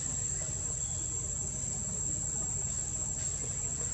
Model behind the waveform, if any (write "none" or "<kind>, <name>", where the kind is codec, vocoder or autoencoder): none